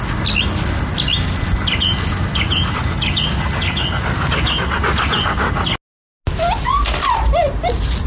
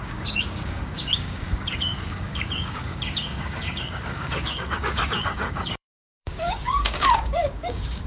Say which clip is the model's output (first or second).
second